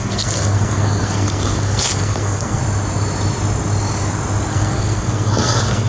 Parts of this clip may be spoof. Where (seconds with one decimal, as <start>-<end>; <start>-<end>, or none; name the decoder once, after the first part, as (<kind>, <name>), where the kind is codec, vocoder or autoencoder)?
0.0-2.6 (codec, SNAC); 4.5-5.9